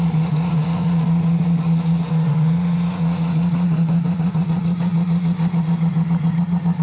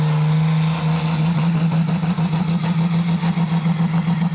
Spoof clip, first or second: first